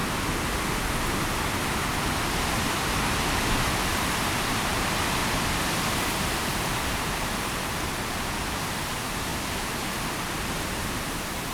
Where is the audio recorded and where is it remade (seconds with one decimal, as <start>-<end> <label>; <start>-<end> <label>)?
0.0-3.7 recorded; 3.7-5.2 remade; 5.2-5.9 recorded; 5.9-9.3 remade; 9.3-10.1 recorded; 10.1-11.5 remade